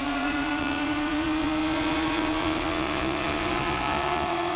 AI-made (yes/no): yes